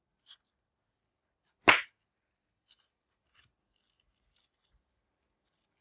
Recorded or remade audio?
recorded